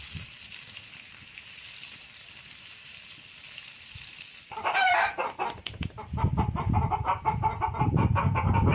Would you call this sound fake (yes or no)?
yes